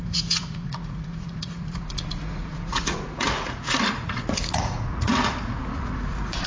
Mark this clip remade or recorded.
remade